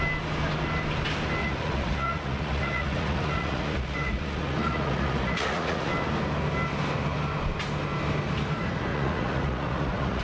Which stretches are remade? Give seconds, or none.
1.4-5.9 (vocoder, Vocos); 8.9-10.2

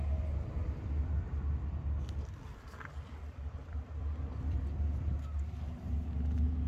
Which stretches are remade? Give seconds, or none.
0.6-4.6 (vocoder, BigVGAN v2)

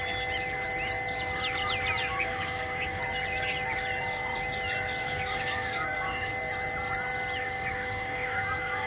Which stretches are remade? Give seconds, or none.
2.1-3.0 (codec, DAC); 5.0-6.3; 7.4-8.9

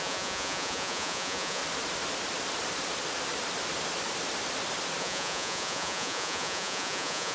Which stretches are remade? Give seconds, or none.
0.0-1.6 (vocoder, Vocos); 5.0-7.3

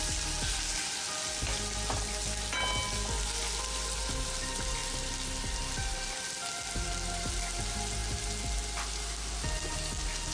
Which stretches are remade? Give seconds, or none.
none

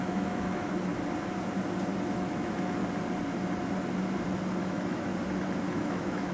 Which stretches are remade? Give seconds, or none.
0.0-0.9 (autoencoder, DAC-VAE); 2.1-2.8; 4.6-5.1; 5.7-6.3